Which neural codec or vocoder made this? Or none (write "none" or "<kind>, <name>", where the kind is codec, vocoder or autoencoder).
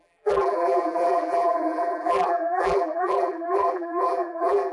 vocoder, BigVGAN v2